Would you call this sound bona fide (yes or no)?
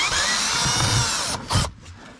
yes